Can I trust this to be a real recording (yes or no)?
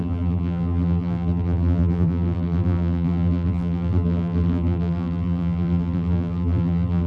no